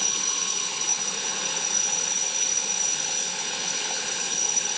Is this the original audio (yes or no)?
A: no